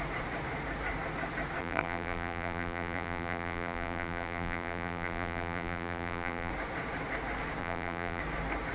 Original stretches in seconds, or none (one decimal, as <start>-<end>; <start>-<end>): 0.0-1.6; 6.5-7.6; 8.2-8.7